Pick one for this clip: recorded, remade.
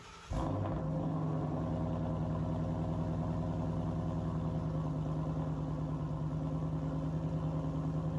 recorded